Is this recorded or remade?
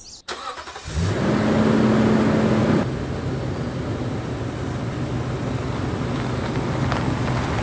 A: recorded